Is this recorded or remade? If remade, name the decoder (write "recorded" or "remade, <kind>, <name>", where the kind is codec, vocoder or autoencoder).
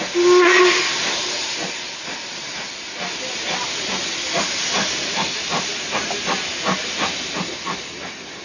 recorded